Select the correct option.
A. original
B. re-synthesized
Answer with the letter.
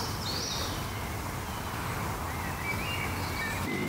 A